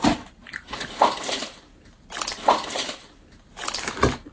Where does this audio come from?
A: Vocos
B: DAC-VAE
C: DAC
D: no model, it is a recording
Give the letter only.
D